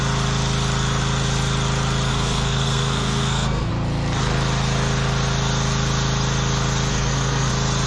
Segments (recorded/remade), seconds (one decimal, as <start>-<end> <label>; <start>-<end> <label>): 0.0-2.1 recorded; 2.1-3.7 remade; 3.7-6.9 recorded; 6.9-7.5 remade; 7.5-7.9 recorded